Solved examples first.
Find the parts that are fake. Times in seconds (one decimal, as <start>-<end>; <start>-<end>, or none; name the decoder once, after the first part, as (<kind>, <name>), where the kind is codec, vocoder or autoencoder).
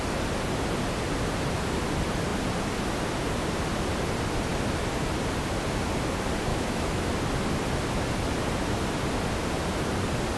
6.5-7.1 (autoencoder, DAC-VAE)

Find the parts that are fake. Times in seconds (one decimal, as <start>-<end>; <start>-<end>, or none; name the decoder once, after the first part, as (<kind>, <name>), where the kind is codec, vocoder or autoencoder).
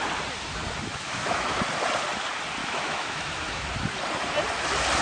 0.9-1.6 (autoencoder, DAC-VAE); 2.6-3.7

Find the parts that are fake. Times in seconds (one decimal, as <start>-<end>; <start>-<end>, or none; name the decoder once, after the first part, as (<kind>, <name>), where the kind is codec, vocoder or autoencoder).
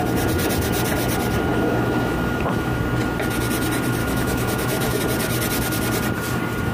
1.5-2.8 (autoencoder, DAC-VAE); 4.0-5.0